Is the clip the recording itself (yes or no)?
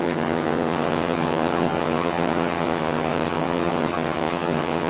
no